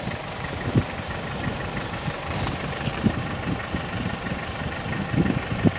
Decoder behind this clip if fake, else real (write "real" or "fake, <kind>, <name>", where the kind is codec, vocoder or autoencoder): fake, vocoder, BigVGAN v2